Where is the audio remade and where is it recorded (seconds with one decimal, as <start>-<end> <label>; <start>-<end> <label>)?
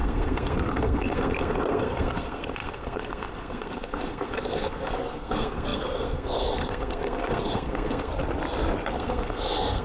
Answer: 0.0-8.1 remade; 8.1-8.9 recorded; 8.9-9.8 remade